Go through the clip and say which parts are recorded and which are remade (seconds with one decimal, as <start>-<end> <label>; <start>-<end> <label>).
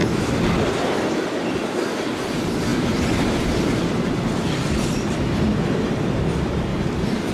0.0-1.1 remade; 1.1-6.7 recorded; 6.7-7.3 remade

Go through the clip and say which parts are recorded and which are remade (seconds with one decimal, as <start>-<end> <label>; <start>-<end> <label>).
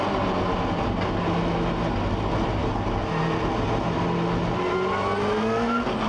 0.0-6.1 recorded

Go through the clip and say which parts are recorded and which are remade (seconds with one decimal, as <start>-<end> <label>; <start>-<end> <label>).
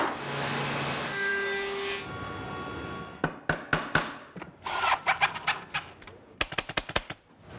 0.0-7.6 recorded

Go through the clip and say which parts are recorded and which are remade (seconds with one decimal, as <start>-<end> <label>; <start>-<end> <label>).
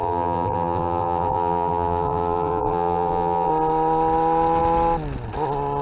0.0-3.5 remade; 3.5-5.8 recorded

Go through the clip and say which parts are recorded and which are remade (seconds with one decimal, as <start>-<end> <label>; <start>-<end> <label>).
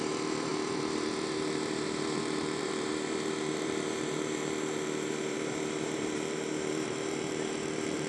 0.0-8.1 remade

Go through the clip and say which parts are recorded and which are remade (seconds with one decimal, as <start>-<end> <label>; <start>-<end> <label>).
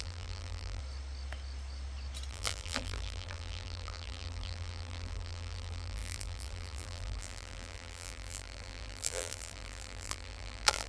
0.0-0.8 remade; 0.8-2.3 recorded; 2.3-10.9 remade